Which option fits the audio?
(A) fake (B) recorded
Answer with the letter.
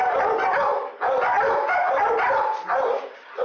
A